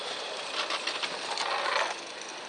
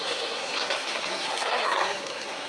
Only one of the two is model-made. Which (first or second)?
second